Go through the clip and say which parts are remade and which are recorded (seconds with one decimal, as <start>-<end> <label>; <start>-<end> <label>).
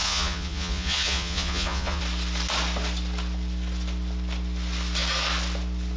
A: 0.0-2.0 remade; 2.0-6.0 recorded